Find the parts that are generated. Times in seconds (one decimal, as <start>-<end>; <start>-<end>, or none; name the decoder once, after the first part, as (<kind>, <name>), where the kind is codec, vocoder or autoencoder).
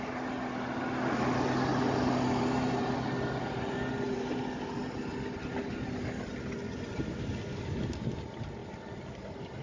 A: none